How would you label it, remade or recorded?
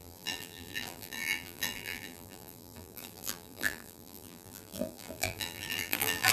remade